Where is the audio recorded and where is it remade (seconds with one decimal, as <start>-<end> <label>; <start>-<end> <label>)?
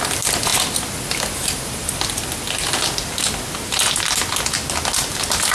0.0-5.5 recorded